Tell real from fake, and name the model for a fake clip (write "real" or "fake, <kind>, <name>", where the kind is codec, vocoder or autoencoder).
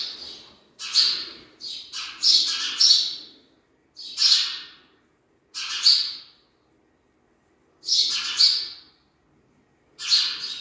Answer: real